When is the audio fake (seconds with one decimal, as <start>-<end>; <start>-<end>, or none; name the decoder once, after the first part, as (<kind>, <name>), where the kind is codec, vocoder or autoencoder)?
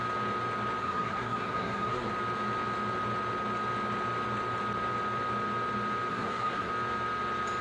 0.8-2.1 (codec, SNAC); 6.1-6.7